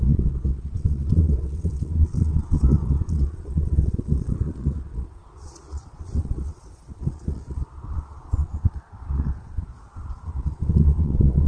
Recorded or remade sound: remade